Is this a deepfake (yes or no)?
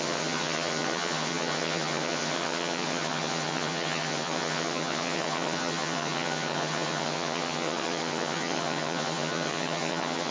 yes